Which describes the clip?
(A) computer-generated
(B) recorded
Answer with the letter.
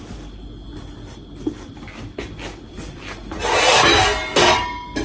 B